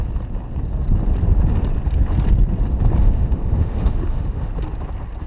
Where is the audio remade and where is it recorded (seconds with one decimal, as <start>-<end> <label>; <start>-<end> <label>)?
0.0-3.0 recorded; 3.0-4.5 remade; 4.5-5.3 recorded